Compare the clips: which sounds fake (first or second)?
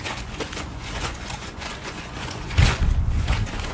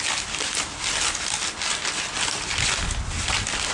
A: first